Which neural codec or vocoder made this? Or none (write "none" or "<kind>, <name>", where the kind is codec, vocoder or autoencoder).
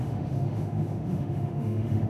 autoencoder, DAC-VAE